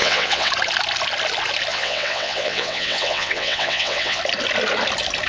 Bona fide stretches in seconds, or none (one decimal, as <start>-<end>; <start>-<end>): 0.5-1.7; 4.2-5.3